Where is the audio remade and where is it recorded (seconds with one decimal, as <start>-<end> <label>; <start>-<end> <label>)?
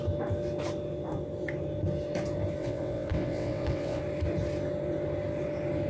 0.0-2.6 recorded; 2.6-4.0 remade; 4.0-5.9 recorded